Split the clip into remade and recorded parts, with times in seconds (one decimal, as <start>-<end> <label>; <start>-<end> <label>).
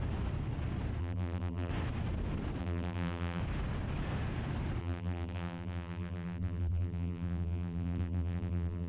0.0-1.0 recorded; 1.0-1.7 remade; 1.7-2.6 recorded; 2.6-3.4 remade; 3.4-4.8 recorded; 4.8-8.9 remade